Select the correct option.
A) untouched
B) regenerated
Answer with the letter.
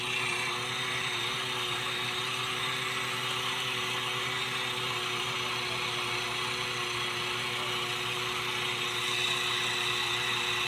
A